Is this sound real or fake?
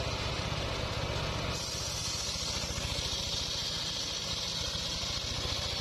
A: real